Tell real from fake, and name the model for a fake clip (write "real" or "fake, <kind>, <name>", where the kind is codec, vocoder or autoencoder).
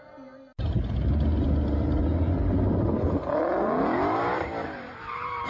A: real